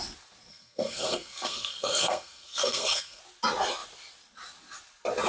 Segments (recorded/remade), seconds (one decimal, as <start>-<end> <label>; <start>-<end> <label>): 0.0-0.5 recorded; 0.5-3.2 remade; 3.2-5.3 recorded